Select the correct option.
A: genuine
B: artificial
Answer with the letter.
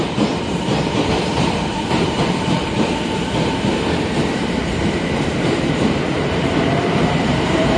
B